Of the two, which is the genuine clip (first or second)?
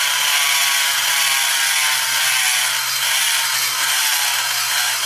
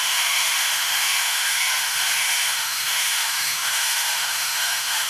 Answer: first